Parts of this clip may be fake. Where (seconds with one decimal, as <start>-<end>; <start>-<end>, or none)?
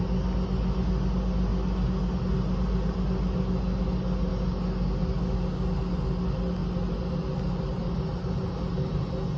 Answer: none